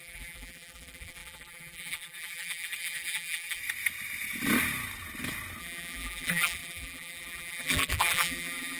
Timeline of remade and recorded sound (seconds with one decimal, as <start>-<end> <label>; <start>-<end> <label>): 0.0-3.6 remade; 3.6-5.6 recorded; 5.6-8.8 remade